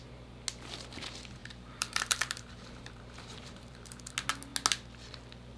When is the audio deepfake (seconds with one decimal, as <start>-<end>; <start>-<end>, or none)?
1.4-4.1